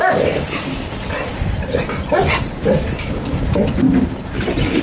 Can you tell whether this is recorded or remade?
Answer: remade